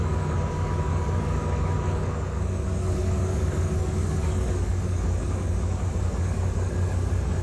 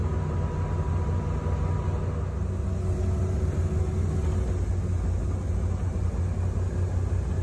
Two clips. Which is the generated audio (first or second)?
first